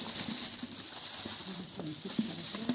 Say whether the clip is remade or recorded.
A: recorded